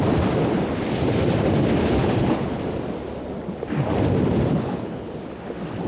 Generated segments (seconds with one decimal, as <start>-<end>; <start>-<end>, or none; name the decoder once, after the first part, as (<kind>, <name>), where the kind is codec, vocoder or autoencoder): 2.0-2.6 (codec, HILCodec); 4.5-5.1